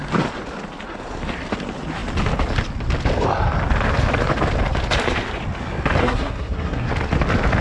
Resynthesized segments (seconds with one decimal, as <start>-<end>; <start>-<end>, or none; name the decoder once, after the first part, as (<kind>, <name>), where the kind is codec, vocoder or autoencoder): 6.0-6.9 (codec, SNAC)